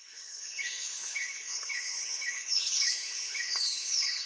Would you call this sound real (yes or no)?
no